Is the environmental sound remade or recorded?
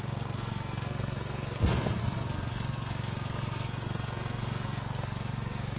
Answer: remade